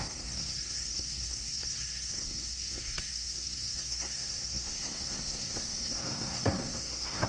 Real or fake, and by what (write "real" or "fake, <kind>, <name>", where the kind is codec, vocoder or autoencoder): fake, codec, SNAC